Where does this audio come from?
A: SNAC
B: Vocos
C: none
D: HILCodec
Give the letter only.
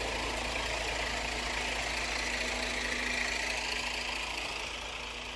C